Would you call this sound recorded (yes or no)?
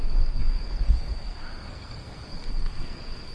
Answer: no